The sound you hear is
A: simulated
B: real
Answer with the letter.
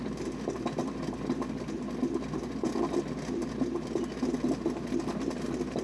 B